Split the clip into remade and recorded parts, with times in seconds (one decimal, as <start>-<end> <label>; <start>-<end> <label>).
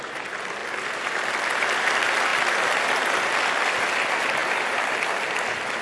0.0-5.8 recorded